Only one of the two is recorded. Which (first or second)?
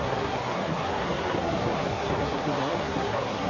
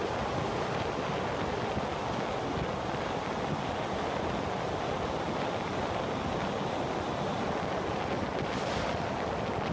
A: second